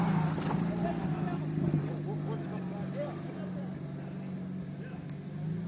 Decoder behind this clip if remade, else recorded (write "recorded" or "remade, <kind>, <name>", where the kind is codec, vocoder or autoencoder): recorded